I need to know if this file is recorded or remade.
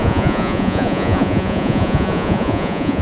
remade